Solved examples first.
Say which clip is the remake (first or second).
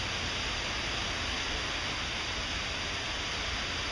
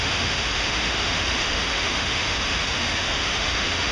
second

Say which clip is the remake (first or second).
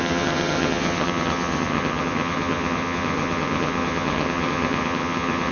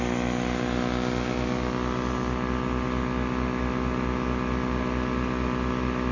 first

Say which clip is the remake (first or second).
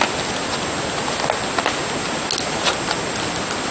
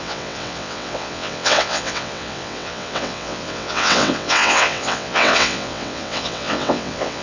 second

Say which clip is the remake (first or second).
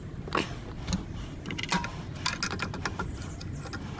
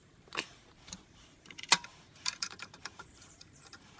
second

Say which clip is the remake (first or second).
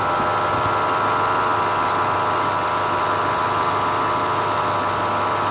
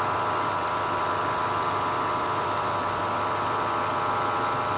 second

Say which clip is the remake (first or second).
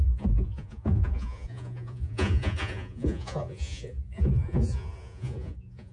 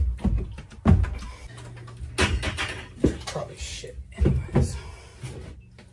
first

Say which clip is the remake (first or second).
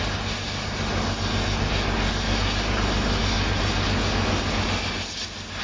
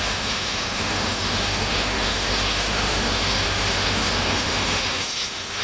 second